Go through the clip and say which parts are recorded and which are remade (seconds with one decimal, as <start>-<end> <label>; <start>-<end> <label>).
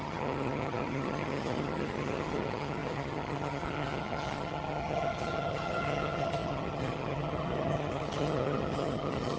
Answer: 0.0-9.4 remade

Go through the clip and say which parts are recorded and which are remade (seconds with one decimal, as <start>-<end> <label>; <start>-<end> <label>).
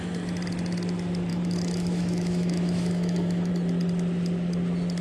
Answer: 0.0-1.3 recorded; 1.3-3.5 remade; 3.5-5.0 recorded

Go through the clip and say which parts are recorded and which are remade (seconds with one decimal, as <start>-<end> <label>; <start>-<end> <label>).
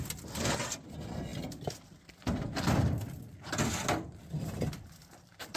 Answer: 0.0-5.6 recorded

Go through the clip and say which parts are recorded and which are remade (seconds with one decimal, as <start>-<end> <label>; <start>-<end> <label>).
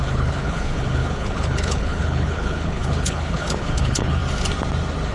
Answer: 0.0-4.2 remade; 4.2-5.1 recorded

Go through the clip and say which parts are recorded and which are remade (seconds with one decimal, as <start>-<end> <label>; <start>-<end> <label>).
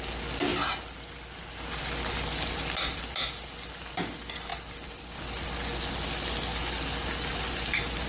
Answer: 0.0-8.1 recorded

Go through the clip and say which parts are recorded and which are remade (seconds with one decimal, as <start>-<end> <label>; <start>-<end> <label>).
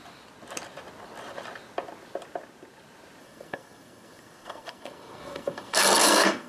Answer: 0.0-3.2 recorded; 3.2-6.5 remade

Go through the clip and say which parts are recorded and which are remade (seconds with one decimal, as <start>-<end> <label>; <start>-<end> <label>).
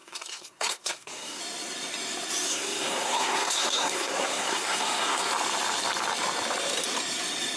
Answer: 0.0-1.4 remade; 1.4-2.5 recorded; 2.5-5.3 remade; 5.3-7.6 recorded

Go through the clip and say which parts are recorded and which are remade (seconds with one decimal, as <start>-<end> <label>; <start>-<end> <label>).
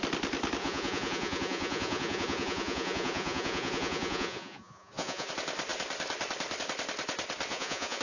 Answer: 0.0-0.6 recorded; 0.6-5.3 remade; 5.3-7.5 recorded; 7.5-8.0 remade